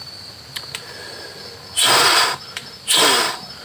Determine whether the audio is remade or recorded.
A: remade